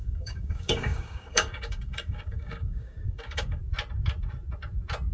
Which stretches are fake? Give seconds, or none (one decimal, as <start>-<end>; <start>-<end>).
0.0-3.6